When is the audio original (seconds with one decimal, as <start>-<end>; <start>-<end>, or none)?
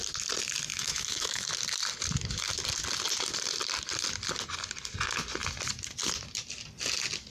0.0-0.7; 1.5-7.3